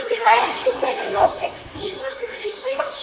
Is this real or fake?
fake